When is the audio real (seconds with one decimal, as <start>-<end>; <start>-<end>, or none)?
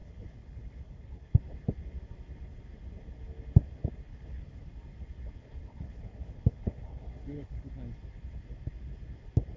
1.4-4.1; 4.7-5.4; 7.7-9.6